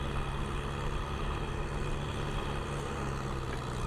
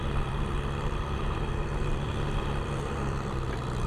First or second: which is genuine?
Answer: first